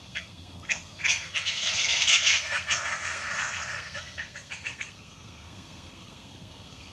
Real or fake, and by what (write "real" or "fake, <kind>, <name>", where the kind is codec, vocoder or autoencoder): fake, codec, SNAC